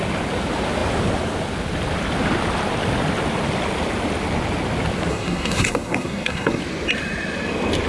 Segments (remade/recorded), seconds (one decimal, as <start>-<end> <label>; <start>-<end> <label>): 0.0-5.1 recorded; 5.1-6.6 remade; 6.6-7.9 recorded